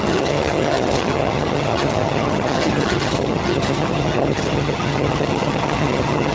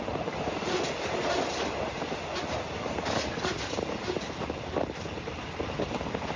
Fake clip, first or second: first